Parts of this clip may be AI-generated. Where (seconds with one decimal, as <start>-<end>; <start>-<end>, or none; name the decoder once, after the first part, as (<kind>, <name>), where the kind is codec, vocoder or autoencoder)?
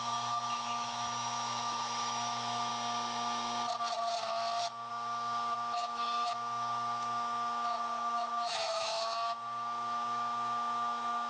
0.0-2.7 (autoencoder, DAC-VAE); 4.9-11.3